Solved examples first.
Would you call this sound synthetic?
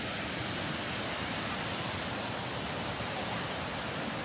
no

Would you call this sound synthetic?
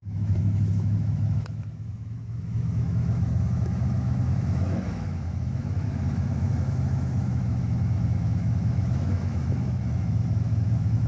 yes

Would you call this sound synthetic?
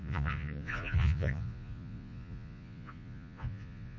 yes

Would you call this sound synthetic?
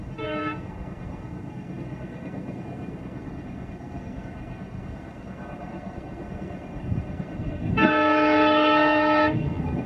yes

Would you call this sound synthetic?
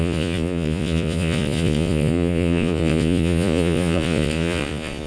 yes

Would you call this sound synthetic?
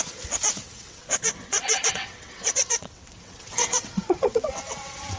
yes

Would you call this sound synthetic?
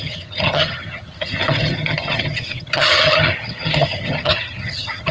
yes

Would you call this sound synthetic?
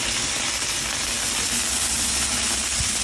no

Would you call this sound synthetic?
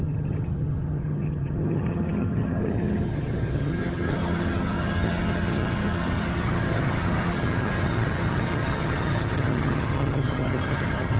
yes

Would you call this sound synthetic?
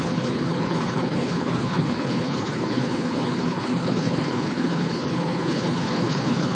yes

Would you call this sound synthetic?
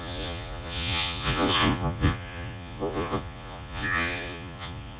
yes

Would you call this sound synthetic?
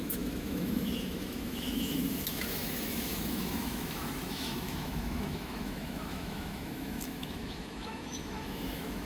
yes